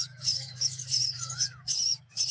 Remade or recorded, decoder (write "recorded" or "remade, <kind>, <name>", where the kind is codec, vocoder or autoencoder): remade, autoencoder, DAC-VAE